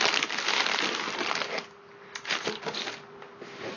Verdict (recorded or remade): recorded